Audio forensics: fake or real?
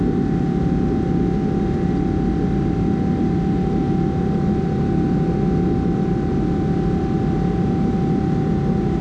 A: real